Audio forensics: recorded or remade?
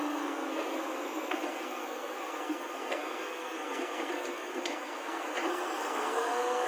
remade